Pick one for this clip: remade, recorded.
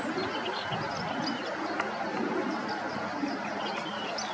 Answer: recorded